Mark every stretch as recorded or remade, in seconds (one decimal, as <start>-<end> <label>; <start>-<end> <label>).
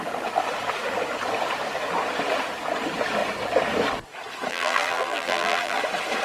0.0-4.5 recorded; 4.5-5.8 remade; 5.8-6.2 recorded